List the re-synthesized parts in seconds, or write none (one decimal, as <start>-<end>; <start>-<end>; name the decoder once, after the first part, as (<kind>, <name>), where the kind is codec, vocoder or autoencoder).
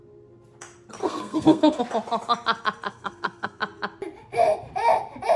1.0-1.8 (codec, SNAC); 2.9-3.6